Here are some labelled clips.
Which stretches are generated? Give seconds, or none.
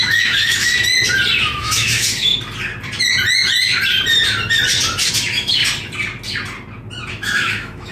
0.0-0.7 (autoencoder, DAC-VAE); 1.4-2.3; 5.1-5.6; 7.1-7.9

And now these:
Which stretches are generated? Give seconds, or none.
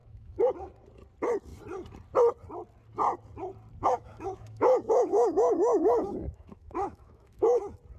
0.0-0.5 (autoencoder, DAC-VAE); 3.8-7.6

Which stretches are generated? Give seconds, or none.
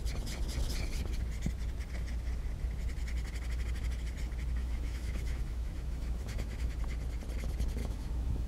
4.6-6.7 (autoencoder, DAC-VAE); 7.8-8.5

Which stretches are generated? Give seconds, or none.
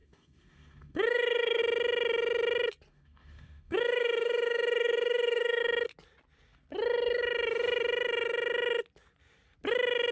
0.0-1.6 (autoencoder, DAC-VAE); 2.9-5.6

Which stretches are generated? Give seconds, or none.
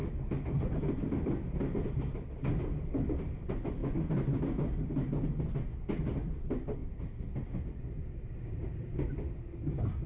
none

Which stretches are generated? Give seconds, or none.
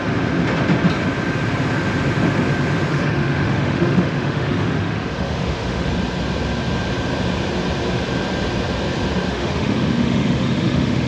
2.9-5.9 (autoencoder, DAC-VAE); 9.3-11.1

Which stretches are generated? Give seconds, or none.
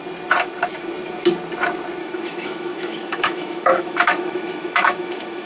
2.0-5.5 (autoencoder, DAC-VAE)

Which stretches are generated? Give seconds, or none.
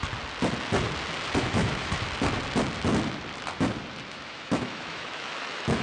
1.4-1.9 (autoencoder, DAC-VAE); 4.1-5.8